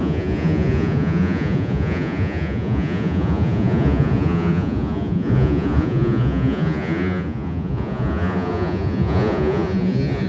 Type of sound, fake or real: fake